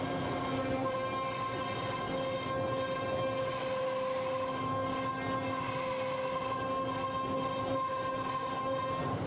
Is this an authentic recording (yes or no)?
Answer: yes